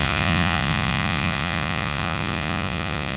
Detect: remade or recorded remade